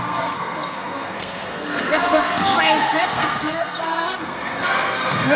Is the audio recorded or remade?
remade